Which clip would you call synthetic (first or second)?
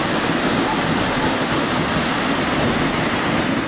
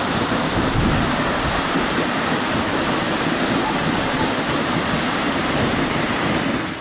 second